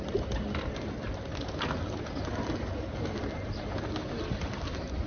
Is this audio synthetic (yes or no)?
no